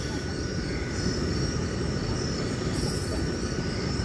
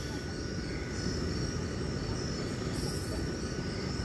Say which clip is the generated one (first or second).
first